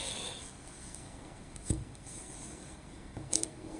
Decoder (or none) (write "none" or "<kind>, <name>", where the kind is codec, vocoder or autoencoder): codec, SNAC